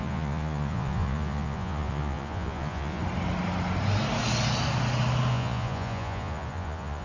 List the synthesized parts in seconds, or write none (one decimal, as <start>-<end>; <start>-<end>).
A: 0.0-3.0; 5.3-7.0